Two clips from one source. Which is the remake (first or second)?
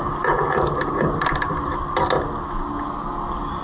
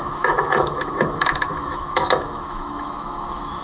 second